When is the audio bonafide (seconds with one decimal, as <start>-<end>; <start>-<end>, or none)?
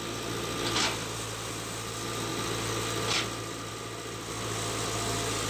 0.0-5.5